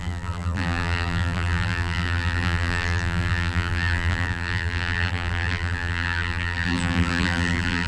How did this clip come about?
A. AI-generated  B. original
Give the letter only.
A